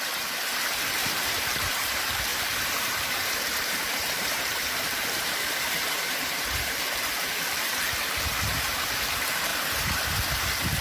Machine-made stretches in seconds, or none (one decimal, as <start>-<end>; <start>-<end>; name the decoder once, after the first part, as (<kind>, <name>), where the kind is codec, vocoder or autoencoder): 1.0-1.8 (vocoder, BigVGAN v2); 2.3-7.1; 9.5-10.4